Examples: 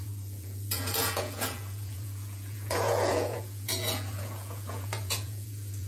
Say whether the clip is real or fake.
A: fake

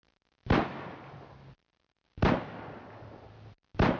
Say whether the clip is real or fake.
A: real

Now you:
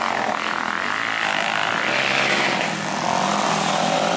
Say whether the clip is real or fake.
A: real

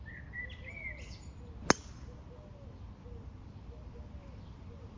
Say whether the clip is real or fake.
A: real